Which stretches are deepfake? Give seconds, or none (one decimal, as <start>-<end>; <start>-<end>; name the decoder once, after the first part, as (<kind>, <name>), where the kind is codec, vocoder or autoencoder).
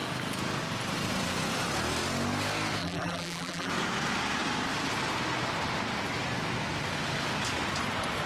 2.8-3.7 (vocoder, BigVGAN v2)